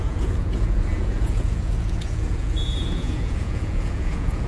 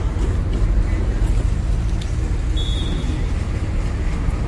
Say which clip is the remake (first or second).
first